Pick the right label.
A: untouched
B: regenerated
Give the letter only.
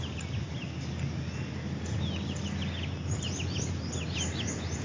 A